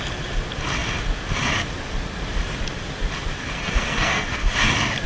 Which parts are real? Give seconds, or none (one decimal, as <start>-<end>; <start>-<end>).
0.0-3.4; 4.5-5.1